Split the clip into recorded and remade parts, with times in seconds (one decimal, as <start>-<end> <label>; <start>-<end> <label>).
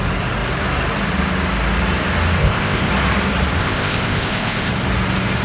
0.0-2.4 recorded; 2.4-2.9 remade; 2.9-3.6 recorded; 3.6-4.7 remade; 4.7-5.4 recorded